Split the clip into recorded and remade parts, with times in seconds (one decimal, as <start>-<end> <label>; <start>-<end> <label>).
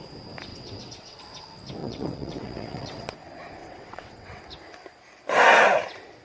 0.0-0.5 recorded; 0.5-1.2 remade; 1.2-1.8 recorded; 1.8-3.2 remade; 3.2-3.6 recorded; 3.6-4.4 remade; 4.4-6.2 recorded